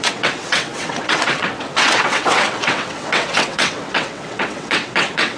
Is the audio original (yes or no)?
no